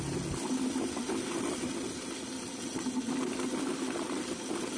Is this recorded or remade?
recorded